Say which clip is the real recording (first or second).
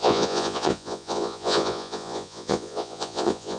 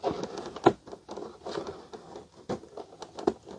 second